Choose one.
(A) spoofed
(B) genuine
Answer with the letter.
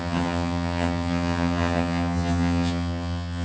A